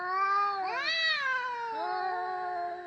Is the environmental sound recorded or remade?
recorded